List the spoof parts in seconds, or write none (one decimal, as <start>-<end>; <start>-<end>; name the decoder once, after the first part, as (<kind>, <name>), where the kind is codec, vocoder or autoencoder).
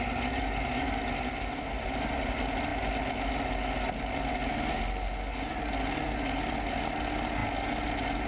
none